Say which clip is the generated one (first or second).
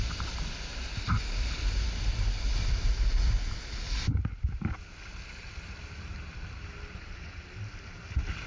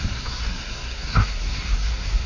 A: second